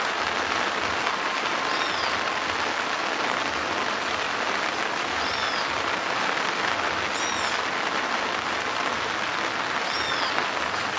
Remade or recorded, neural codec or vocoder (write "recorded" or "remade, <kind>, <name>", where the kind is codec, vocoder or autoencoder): recorded